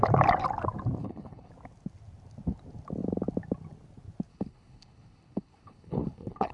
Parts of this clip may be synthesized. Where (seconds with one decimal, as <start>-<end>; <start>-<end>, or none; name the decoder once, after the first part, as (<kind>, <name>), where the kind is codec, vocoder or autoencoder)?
1.0-1.5 (codec, HILCodec); 4.3-6.5